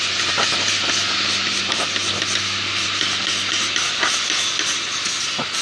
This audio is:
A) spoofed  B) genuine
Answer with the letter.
B